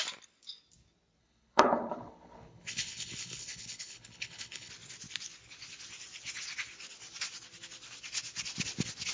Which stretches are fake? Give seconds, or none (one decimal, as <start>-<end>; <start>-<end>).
1.2-4.7